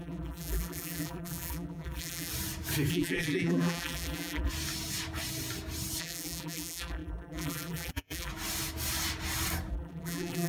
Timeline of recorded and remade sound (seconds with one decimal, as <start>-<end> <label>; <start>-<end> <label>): 0.0-2.3 remade; 2.3-2.9 recorded; 2.9-4.5 remade; 4.5-6.0 recorded; 6.0-8.3 remade; 8.3-9.7 recorded; 9.7-10.5 remade